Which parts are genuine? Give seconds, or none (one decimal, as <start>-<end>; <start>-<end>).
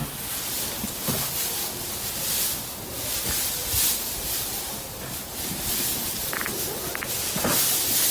0.0-8.1